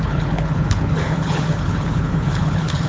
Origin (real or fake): fake